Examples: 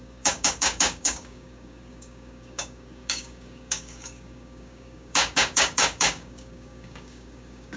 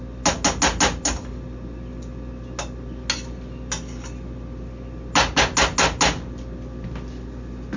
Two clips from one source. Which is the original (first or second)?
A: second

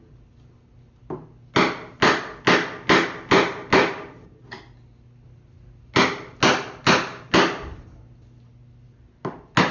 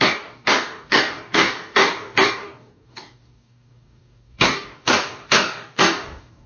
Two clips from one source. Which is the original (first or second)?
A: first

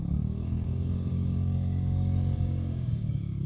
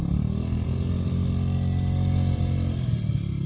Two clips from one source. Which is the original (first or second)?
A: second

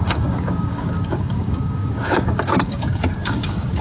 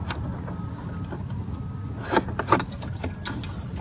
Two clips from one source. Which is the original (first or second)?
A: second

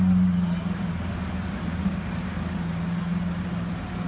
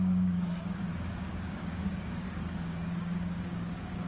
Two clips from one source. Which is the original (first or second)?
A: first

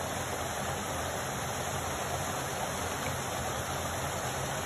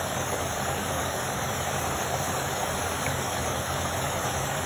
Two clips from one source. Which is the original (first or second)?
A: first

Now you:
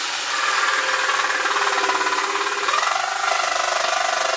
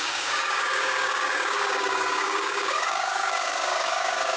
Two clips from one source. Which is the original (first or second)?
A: first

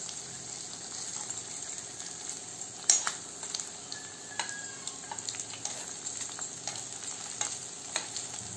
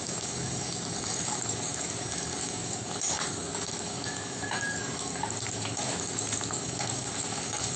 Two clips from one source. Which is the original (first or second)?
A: first